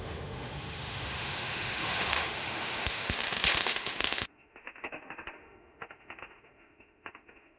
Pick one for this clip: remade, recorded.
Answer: remade